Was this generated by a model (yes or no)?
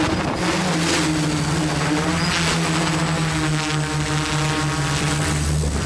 no